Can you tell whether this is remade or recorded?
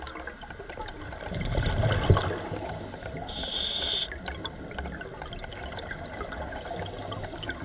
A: recorded